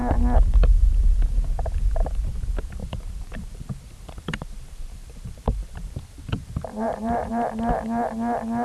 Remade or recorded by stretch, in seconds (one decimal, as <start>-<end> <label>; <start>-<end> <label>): 0.0-2.8 recorded; 2.8-7.3 remade; 7.3-8.6 recorded